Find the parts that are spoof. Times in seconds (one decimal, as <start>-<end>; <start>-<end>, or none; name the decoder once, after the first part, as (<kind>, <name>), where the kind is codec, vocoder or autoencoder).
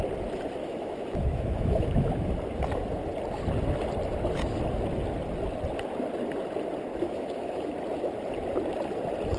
0.6-2.3 (autoencoder, DAC-VAE); 6.9-7.7